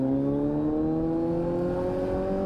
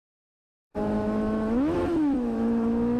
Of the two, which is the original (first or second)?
first